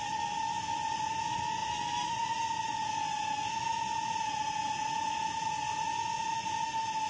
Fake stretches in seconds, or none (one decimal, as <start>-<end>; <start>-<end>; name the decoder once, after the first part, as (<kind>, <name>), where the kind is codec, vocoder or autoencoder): none